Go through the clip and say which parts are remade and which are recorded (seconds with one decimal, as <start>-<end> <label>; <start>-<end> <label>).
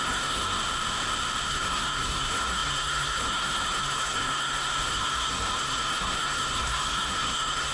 0.0-0.6 remade; 0.6-1.5 recorded; 1.5-7.7 remade